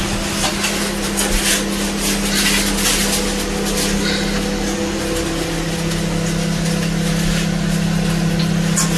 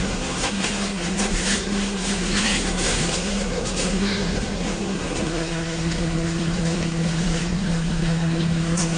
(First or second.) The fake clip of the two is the second